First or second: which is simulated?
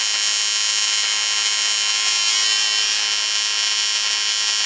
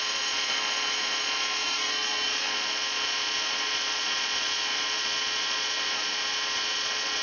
second